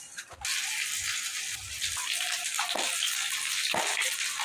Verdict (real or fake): real